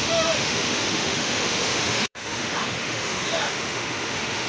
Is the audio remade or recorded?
remade